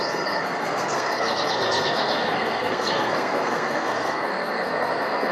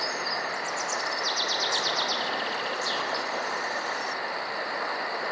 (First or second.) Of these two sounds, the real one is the second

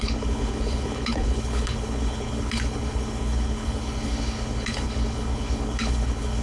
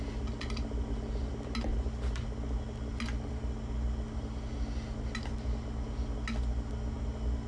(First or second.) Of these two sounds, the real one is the second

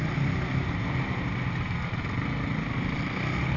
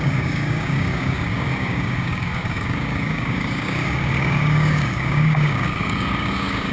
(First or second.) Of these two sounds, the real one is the first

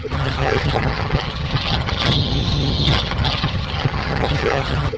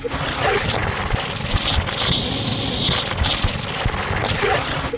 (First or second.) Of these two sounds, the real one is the second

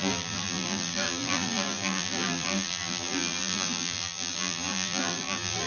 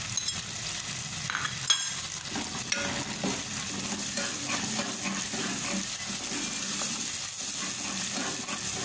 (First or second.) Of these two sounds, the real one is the second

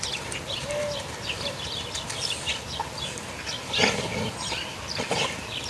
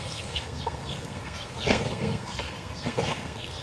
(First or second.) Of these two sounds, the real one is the first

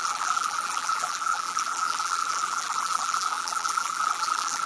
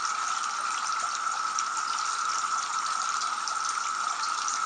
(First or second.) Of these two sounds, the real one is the second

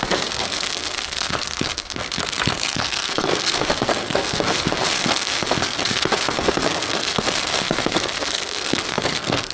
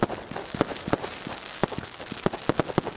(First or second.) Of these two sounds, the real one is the second